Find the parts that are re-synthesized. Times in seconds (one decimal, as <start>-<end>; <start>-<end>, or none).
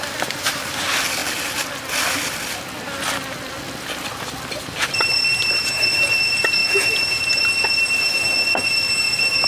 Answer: 5.3-5.8